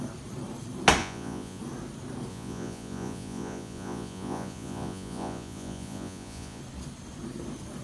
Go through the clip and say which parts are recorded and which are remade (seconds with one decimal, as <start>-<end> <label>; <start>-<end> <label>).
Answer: 0.0-1.0 recorded; 1.0-1.6 remade; 1.6-2.3 recorded; 2.3-6.6 remade; 6.6-7.8 recorded